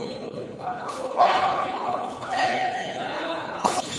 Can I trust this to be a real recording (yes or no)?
no